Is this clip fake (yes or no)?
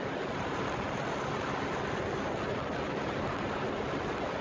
no